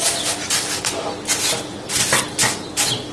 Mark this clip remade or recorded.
recorded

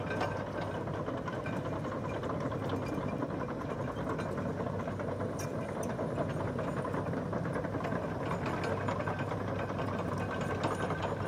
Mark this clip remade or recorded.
recorded